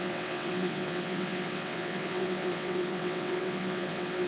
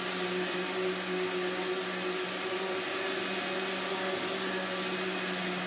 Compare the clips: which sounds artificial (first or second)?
first